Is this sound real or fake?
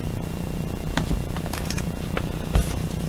real